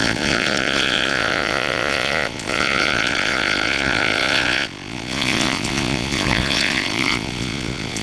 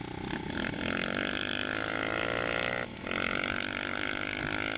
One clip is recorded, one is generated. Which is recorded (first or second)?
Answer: second